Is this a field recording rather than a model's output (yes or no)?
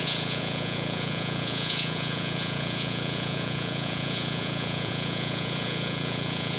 no